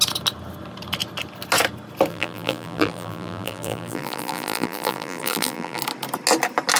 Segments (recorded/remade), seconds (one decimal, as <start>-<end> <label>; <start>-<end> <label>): 0.0-2.1 recorded; 2.1-5.8 remade; 5.8-6.8 recorded